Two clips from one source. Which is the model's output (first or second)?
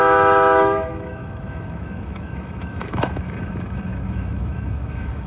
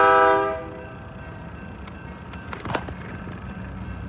first